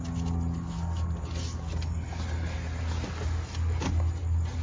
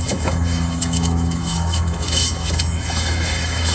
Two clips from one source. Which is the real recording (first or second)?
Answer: first